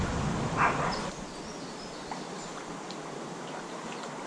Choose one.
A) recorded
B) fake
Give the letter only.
A